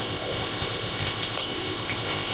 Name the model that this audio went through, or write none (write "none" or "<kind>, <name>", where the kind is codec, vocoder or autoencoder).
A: codec, ZipCodec